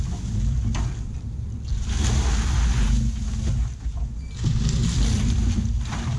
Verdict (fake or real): real